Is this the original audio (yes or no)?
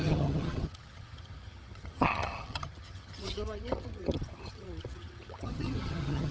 no